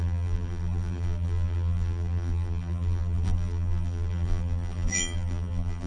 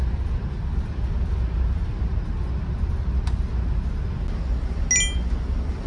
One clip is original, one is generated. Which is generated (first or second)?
first